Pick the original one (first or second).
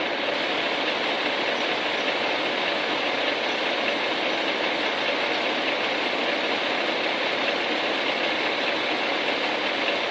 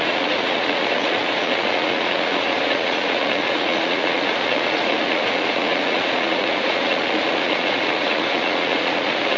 first